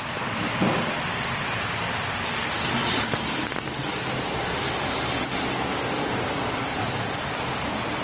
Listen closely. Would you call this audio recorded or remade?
recorded